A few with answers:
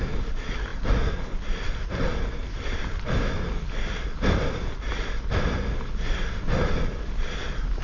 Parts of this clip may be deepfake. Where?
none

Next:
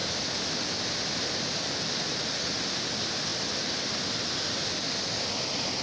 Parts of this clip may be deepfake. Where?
none

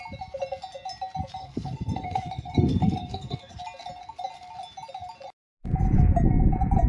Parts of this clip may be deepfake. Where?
1.4-3.6 (codec, SNAC)

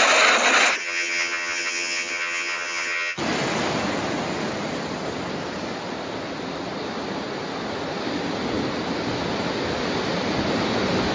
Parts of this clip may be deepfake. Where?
0.8-3.2 (vocoder, HiFi-GAN)

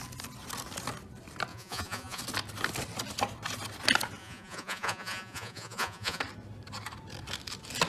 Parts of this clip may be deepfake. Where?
1.5-2.2 (vocoder, Vocos); 4.2-6.2

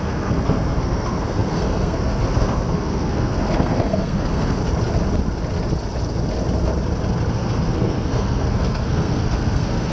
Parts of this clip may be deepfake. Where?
0.0-4.6 (codec, SNAC); 7.3-9.9